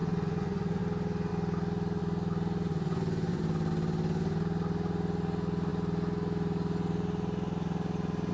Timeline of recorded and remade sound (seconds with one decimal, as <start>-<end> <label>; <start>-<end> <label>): 0.0-0.8 remade; 0.8-2.7 recorded; 2.7-3.4 remade; 3.4-8.3 recorded